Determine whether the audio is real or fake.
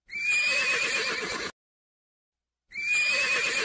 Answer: real